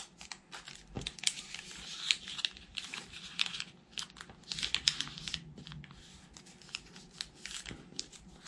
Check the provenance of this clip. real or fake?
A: real